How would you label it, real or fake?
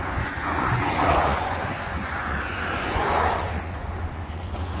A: fake